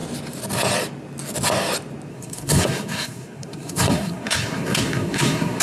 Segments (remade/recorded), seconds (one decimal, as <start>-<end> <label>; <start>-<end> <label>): 0.0-2.1 recorded; 2.1-5.6 remade